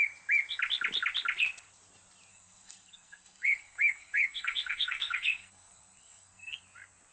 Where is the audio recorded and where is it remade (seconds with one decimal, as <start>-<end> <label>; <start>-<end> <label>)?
0.0-2.3 recorded; 2.3-6.6 remade; 6.6-7.1 recorded